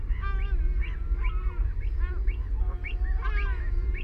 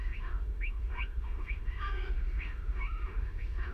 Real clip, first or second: first